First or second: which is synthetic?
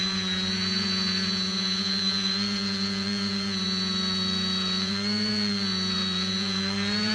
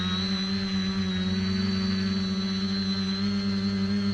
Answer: first